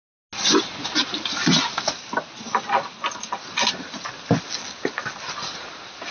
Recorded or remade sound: recorded